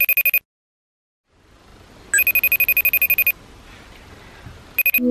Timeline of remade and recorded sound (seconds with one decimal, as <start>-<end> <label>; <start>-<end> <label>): 0.0-5.1 recorded